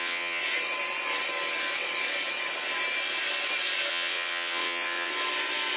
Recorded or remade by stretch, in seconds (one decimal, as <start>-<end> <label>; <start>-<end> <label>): 0.0-0.4 remade; 0.4-3.9 recorded; 3.9-5.1 remade; 5.1-5.8 recorded